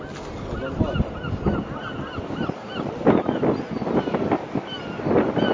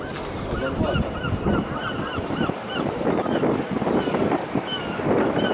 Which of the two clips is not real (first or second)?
second